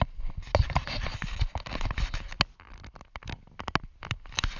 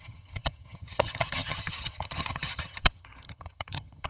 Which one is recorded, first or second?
first